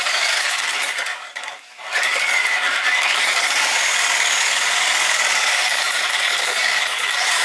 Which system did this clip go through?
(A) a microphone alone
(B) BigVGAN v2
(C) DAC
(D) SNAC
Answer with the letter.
C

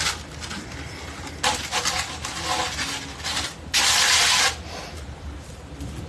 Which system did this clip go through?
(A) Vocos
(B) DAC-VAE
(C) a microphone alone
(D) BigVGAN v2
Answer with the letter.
C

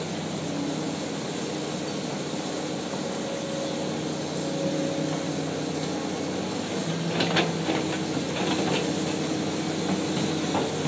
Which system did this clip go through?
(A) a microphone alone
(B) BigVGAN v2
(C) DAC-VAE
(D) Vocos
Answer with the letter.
A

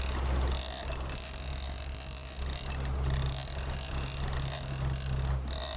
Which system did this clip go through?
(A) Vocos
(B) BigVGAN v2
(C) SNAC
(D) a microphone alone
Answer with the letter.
D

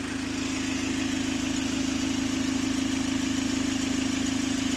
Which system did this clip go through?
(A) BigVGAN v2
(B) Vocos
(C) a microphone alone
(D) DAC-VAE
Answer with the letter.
C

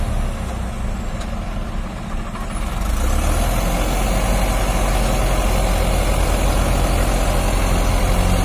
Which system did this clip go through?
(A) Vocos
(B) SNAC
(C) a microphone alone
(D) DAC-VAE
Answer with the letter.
C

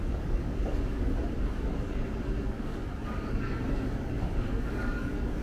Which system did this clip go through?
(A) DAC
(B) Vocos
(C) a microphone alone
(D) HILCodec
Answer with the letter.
A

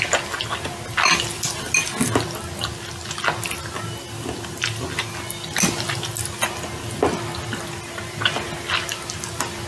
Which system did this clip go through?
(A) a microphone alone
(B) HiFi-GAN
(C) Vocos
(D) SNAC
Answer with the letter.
A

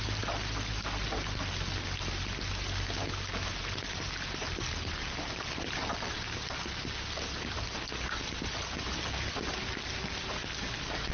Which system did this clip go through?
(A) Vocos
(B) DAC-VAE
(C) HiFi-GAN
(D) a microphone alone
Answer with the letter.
D